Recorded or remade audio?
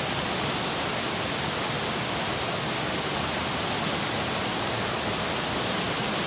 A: recorded